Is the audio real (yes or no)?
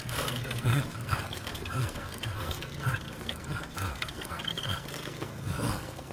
no